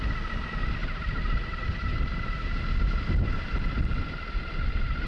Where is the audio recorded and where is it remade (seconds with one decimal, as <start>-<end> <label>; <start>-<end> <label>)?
0.0-0.8 recorded; 0.8-2.6 remade; 2.6-5.1 recorded